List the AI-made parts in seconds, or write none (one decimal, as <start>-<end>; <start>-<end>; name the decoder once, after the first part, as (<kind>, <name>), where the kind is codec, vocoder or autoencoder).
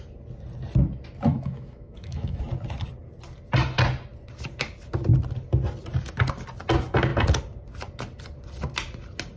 1.3-2.4 (autoencoder, DAC-VAE)